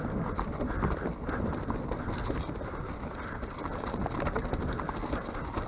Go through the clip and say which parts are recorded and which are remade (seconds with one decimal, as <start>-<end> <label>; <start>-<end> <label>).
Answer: 0.0-5.7 recorded